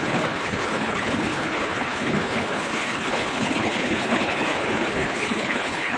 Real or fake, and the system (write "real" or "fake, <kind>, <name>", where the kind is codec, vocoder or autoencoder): fake, codec, HILCodec